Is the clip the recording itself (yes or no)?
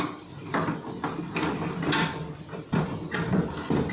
no